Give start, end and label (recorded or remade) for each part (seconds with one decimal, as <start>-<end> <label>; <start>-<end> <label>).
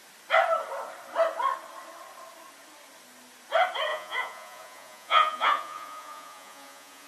0.0-3.9 recorded; 3.9-7.1 remade